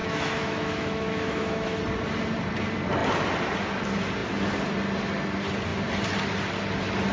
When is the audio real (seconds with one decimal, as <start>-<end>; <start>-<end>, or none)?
1.8-7.1